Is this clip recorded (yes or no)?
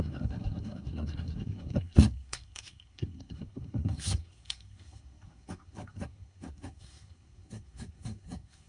no